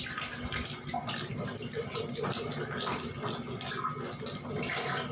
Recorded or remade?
recorded